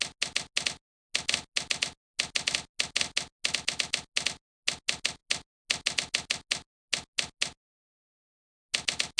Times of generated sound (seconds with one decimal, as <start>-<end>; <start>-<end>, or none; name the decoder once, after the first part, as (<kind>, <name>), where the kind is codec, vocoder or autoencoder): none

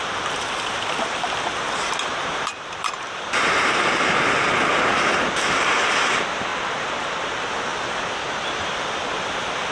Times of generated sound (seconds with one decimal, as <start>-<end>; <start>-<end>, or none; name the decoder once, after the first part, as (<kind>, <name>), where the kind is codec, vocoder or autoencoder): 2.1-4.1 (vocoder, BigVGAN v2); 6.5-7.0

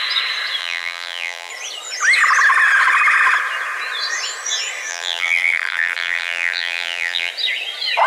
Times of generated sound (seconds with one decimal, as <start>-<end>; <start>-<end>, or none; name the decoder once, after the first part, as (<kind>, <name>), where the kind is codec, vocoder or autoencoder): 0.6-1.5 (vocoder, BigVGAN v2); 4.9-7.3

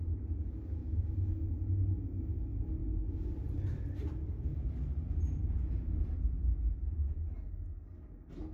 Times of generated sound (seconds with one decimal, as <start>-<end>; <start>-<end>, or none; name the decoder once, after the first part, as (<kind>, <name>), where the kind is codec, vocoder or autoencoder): 2.8-3.8 (vocoder, BigVGAN v2); 4.5-7.1

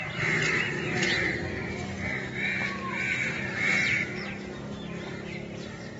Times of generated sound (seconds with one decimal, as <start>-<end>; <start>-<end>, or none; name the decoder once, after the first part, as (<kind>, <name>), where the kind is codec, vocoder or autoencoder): 0.4-1.4 (vocoder, BigVGAN v2)

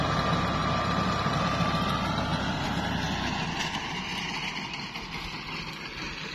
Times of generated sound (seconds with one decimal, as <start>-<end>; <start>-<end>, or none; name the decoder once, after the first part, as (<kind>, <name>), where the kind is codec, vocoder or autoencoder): 0.6-1.4 (vocoder, BigVGAN v2)